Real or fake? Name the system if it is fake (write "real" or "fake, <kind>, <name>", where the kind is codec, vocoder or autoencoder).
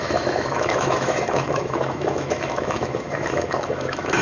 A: fake, autoencoder, DAC-VAE